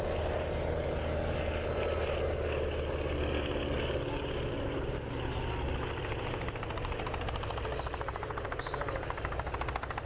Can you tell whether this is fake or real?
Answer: real